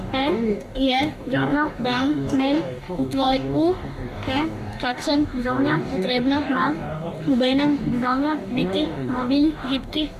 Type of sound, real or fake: fake